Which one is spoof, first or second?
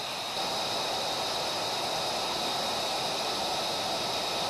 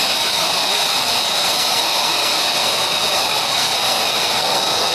second